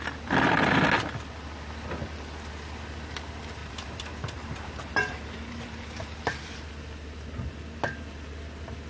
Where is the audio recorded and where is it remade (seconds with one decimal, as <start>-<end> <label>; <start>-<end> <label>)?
0.0-3.6 recorded; 3.6-6.7 remade; 6.7-8.9 recorded